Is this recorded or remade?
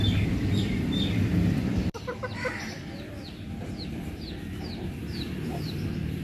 remade